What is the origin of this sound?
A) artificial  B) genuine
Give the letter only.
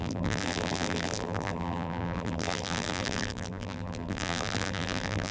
A